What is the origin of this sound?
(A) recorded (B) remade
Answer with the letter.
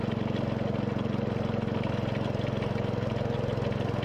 A